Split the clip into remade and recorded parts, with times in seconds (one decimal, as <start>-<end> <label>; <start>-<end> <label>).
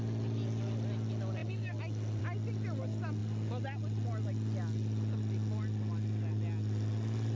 0.0-7.4 recorded